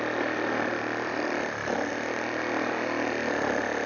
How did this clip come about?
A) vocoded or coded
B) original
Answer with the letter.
B